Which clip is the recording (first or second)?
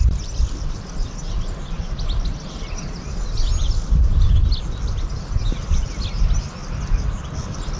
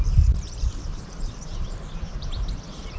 first